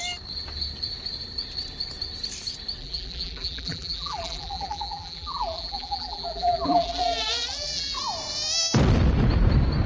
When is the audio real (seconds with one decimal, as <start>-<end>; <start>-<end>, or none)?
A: 0.0-2.8; 8.0-9.9